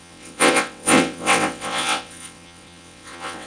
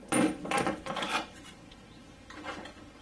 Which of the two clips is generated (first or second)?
first